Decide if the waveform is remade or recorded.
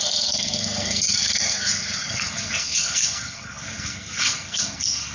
remade